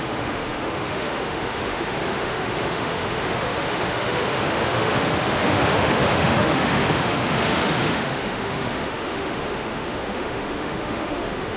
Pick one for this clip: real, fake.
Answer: fake